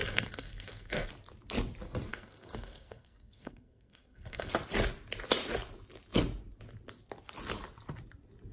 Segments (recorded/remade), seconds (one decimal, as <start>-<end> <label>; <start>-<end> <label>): 0.0-1.1 remade; 1.1-2.1 recorded; 2.1-4.5 remade; 4.5-8.5 recorded